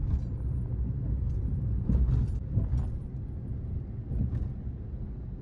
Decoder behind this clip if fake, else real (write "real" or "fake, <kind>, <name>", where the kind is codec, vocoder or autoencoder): real